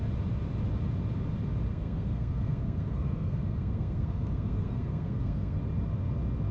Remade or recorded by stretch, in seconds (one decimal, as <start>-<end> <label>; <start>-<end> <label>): 0.0-1.7 recorded; 1.7-5.6 remade; 5.6-6.5 recorded